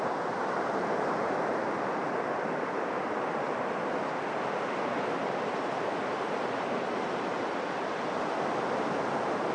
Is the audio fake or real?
real